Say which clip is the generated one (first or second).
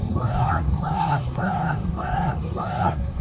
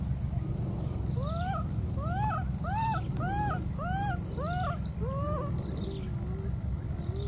first